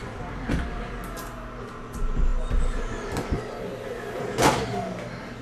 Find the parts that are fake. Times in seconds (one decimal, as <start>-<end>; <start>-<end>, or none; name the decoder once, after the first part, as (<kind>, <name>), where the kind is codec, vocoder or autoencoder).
none